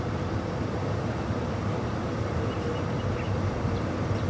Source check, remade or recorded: recorded